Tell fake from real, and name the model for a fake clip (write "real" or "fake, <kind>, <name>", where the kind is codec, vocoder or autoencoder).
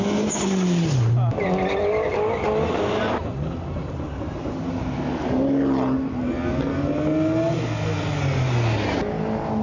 real